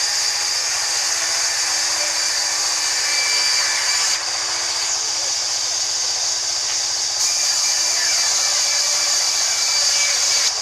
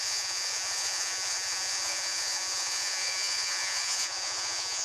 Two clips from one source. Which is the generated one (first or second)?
second